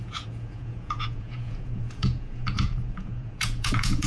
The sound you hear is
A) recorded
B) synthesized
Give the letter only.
B